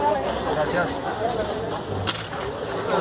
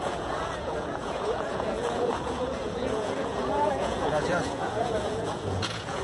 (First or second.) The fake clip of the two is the second